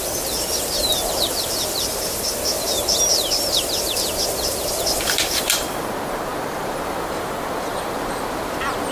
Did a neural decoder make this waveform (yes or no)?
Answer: yes